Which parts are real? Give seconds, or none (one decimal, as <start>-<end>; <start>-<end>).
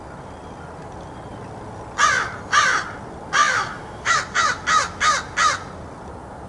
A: 0.0-3.4; 4.2-6.5